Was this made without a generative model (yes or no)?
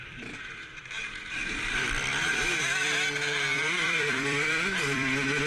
no